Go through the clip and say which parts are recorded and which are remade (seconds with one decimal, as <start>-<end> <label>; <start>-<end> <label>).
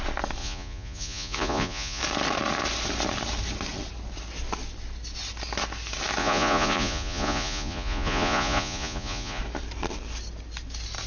0.0-0.4 recorded; 0.4-2.0 remade; 2.0-6.2 recorded; 6.2-9.4 remade; 9.4-11.1 recorded